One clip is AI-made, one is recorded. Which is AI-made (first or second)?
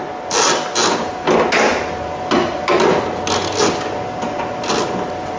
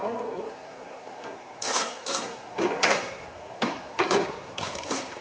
second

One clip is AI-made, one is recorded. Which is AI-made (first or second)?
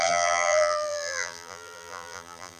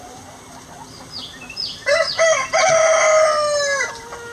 first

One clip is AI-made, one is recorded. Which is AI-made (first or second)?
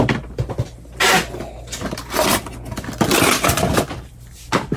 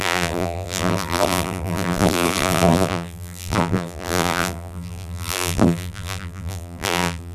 second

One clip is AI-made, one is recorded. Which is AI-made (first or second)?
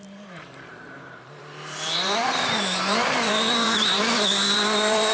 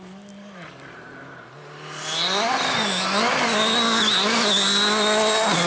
first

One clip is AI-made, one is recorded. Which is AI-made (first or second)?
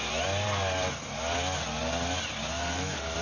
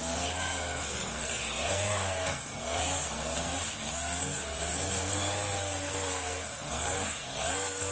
second